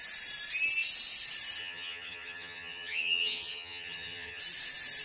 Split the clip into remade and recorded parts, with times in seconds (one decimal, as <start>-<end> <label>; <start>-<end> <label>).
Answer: 0.0-1.6 recorded; 1.6-4.4 remade; 4.4-5.0 recorded